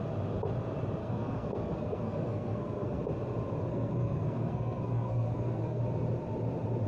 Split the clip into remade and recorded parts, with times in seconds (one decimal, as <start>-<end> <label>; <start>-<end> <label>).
0.0-1.0 recorded; 1.0-3.0 remade; 3.0-3.7 recorded; 3.7-5.8 remade; 5.8-6.9 recorded